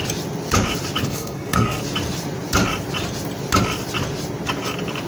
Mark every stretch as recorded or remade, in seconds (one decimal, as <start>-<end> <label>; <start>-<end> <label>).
0.0-1.0 recorded; 1.0-1.8 remade; 1.8-5.1 recorded